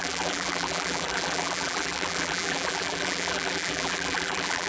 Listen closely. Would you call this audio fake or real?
fake